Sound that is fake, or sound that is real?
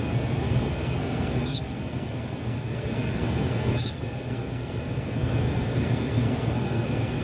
fake